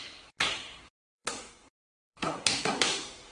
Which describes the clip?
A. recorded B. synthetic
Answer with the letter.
B